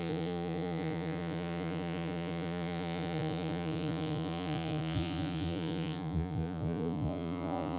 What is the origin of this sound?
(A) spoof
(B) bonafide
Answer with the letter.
A